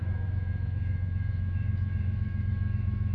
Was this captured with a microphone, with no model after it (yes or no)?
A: no